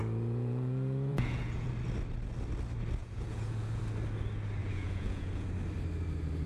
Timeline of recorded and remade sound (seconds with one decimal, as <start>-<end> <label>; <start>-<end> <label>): 0.0-1.7 remade; 1.7-3.0 recorded; 3.0-3.8 remade; 3.8-4.6 recorded; 4.6-5.5 remade; 5.5-6.5 recorded